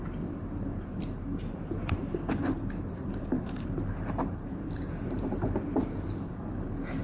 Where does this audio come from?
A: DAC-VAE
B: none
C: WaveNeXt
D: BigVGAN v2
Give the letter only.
D